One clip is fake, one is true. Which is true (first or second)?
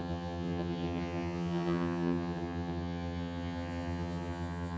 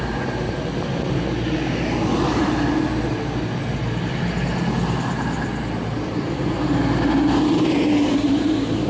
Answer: second